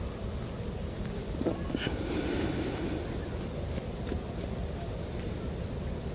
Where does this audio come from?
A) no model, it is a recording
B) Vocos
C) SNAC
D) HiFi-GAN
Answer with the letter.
A